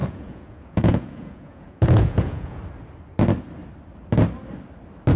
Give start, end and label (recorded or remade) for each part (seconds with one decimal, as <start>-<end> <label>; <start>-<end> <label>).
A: 0.0-2.6 remade; 2.6-5.2 recorded